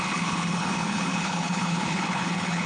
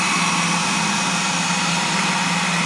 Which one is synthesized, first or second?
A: first